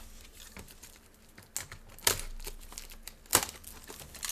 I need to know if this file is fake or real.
real